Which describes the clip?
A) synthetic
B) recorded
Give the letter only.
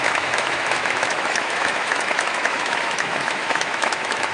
A